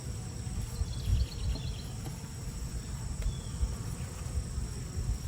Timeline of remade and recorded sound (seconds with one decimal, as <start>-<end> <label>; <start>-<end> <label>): 0.0-1.1 recorded; 1.1-3.5 remade; 3.5-5.3 recorded